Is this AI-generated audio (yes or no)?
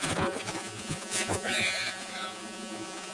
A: yes